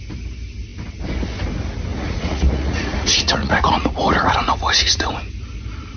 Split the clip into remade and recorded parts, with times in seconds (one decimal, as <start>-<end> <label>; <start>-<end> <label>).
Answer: 0.0-1.9 recorded; 1.9-5.2 remade; 5.2-6.0 recorded